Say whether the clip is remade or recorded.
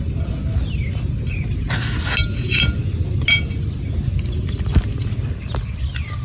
recorded